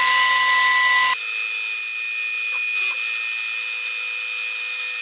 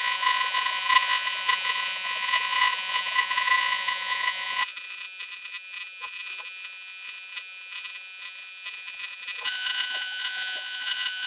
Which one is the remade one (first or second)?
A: second